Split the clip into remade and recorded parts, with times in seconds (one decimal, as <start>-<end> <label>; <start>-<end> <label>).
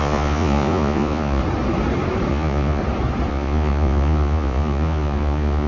0.0-1.4 remade; 1.4-2.3 recorded; 2.3-2.8 remade; 2.8-3.3 recorded; 3.3-5.7 remade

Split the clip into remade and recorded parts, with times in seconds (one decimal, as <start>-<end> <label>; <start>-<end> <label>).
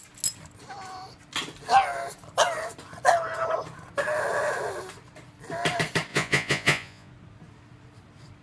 0.0-6.1 recorded; 6.1-7.1 remade; 7.1-8.4 recorded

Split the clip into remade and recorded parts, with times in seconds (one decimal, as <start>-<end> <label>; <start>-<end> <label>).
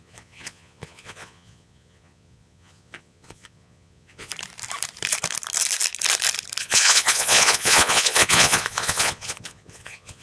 0.0-4.3 remade; 4.3-6.6 recorded; 6.6-10.2 remade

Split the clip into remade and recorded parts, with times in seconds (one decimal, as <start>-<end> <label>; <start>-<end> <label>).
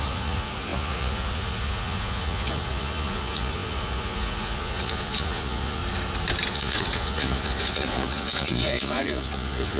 0.0-5.8 remade; 5.8-6.5 recorded; 6.5-9.8 remade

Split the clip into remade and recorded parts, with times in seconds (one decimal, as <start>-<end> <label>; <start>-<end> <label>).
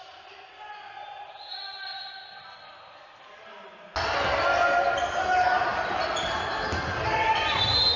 0.0-8.0 recorded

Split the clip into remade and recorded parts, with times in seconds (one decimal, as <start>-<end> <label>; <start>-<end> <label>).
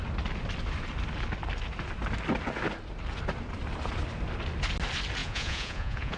0.0-5.2 recorded; 5.2-6.2 remade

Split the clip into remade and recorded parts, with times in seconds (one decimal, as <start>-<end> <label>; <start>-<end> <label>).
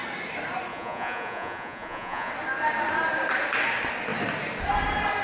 0.0-0.7 recorded; 0.7-2.3 remade; 2.3-5.2 recorded